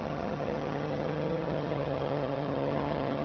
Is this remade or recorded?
remade